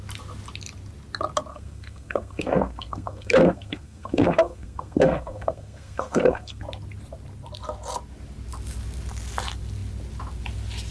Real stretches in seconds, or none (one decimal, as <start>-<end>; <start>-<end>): 0.0-1.5; 6.6-10.9